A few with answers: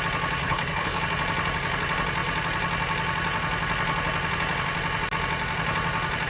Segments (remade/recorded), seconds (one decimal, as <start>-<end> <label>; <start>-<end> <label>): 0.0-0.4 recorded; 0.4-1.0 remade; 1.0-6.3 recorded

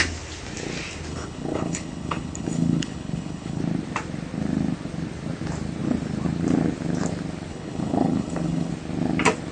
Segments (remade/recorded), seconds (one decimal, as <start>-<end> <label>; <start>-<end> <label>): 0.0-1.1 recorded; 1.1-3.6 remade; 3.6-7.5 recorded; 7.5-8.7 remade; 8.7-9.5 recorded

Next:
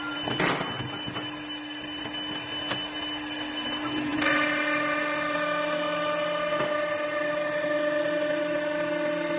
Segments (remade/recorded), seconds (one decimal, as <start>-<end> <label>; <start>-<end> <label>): 0.0-9.4 recorded